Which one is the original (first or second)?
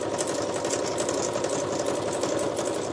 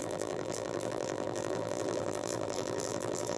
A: first